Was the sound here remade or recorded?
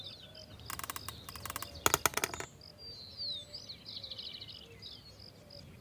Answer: recorded